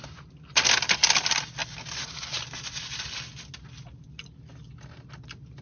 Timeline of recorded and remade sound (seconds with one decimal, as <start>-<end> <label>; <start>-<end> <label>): 0.0-5.6 recorded